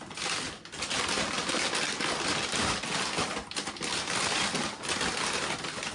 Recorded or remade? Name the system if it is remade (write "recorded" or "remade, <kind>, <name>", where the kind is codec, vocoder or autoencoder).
recorded